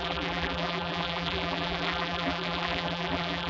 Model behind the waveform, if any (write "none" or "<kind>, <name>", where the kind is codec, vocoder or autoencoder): vocoder, BigVGAN v2